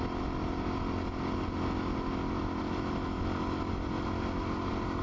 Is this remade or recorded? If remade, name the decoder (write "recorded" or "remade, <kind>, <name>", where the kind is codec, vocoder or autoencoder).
recorded